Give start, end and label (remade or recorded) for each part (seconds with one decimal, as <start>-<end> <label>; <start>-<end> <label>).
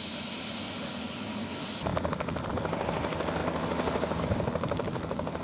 0.0-5.4 recorded